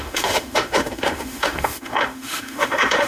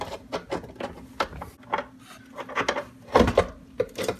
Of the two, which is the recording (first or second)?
second